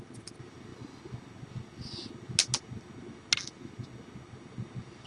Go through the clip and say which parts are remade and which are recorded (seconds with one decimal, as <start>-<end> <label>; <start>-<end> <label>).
0.0-5.1 recorded